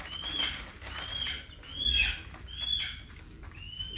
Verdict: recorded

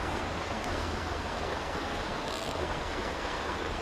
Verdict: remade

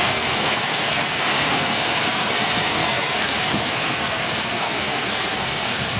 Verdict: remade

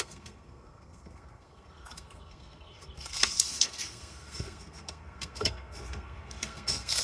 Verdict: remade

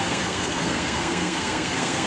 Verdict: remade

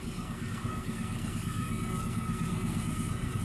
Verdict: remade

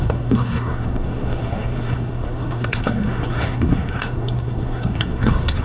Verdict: remade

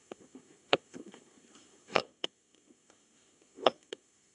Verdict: remade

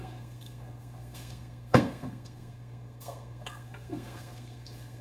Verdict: remade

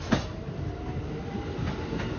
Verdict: recorded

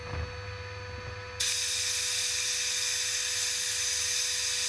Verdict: recorded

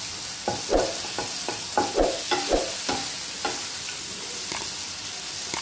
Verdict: recorded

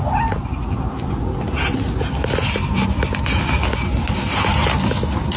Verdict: recorded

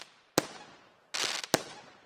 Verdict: recorded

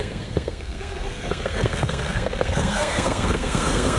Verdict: remade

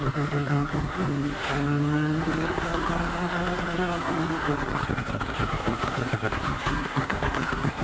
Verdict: remade